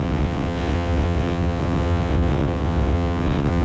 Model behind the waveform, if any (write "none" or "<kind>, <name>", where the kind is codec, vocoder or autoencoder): vocoder, WaveNeXt